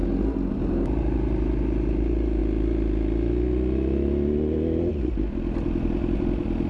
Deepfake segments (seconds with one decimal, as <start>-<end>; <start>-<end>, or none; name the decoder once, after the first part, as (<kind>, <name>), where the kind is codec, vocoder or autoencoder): 0.5-2.4 (vocoder, BigVGAN v2)